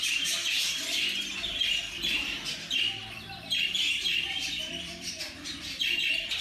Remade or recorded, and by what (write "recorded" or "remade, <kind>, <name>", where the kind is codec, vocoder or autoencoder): remade, vocoder, BigVGAN v2